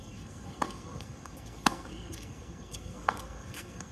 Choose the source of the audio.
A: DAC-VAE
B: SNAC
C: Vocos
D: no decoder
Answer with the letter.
B